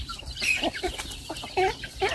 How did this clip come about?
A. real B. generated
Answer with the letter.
B